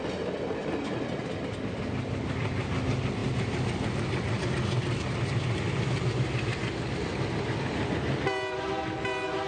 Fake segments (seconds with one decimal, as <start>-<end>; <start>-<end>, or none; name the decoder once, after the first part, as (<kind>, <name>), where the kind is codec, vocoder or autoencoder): none